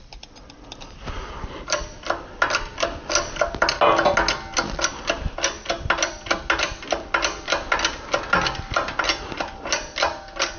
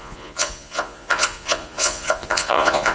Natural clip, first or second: first